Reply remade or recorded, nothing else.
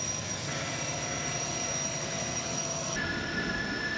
recorded